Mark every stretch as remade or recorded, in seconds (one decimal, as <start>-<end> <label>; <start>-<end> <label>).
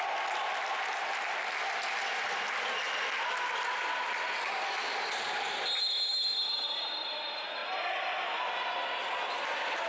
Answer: 0.0-9.9 recorded